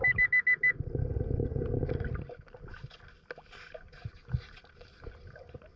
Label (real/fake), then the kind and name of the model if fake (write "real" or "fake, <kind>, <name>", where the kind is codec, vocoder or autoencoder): real